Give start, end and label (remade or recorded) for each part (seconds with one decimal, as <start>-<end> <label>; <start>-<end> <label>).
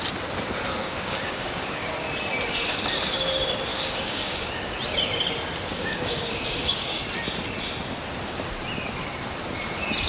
0.0-0.8 recorded; 0.8-1.9 remade; 1.9-3.7 recorded; 3.7-4.5 remade; 4.5-5.7 recorded; 5.7-7.0 remade; 7.0-10.1 recorded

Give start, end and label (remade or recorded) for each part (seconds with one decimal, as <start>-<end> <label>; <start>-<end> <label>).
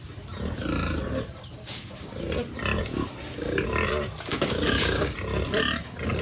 0.0-1.6 recorded; 1.6-2.1 remade; 2.1-4.3 recorded; 4.3-5.0 remade; 5.0-6.2 recorded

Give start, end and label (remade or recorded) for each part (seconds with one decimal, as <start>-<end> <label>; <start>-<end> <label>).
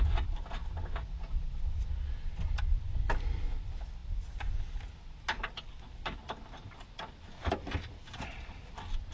0.0-9.1 recorded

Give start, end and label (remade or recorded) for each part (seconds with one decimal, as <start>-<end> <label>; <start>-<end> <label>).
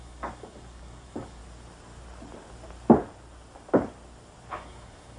0.0-1.4 remade; 1.4-4.5 recorded; 4.5-5.2 remade